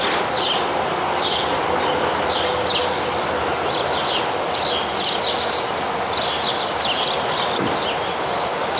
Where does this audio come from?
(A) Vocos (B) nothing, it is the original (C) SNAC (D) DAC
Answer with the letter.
B